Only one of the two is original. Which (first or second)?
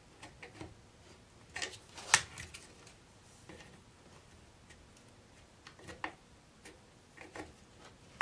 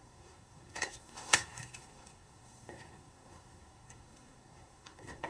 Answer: first